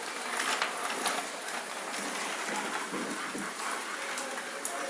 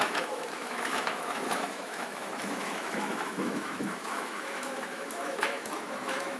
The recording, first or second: first